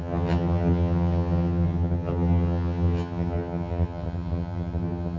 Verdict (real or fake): fake